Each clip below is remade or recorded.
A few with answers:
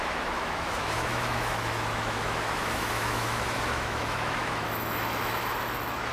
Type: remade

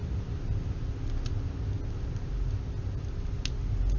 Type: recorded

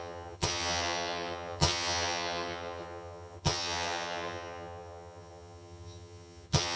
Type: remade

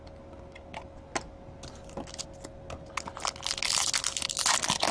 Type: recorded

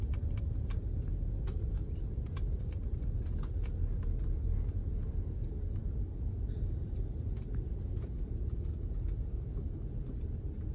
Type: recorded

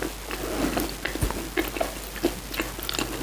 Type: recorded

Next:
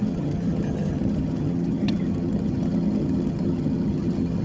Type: remade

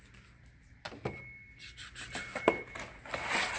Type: recorded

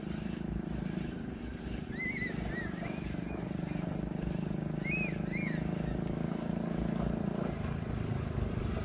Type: recorded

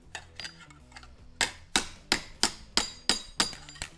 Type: recorded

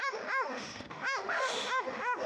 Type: remade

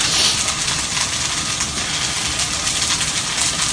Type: recorded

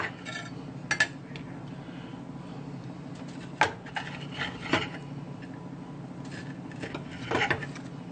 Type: recorded